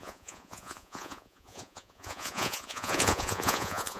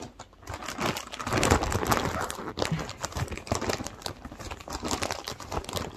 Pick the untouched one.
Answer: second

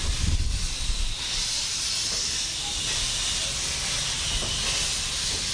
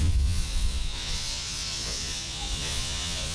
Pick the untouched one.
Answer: first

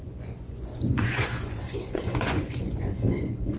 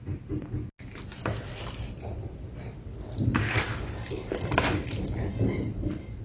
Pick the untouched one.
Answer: second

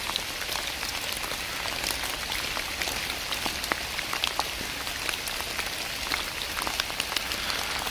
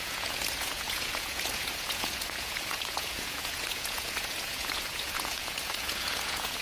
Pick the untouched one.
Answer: first